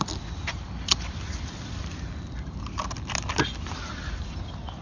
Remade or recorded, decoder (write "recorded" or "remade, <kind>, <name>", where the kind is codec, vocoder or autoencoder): recorded